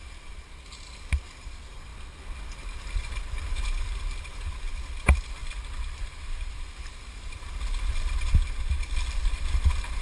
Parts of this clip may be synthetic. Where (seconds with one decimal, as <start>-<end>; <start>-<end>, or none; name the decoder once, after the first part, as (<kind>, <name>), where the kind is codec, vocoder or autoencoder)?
0.0-1.9 (vocoder, BigVGAN v2); 2.4-5.4; 6.5-10.0